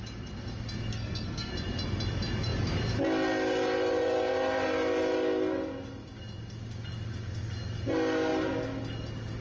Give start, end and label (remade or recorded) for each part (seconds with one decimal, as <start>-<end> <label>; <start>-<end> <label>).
0.0-0.9 recorded; 0.9-1.5 remade; 1.5-9.4 recorded